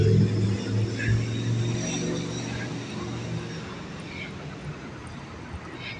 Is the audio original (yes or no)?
yes